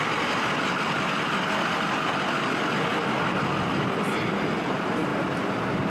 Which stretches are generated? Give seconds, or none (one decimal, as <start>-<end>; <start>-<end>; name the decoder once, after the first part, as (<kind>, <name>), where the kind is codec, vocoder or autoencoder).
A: none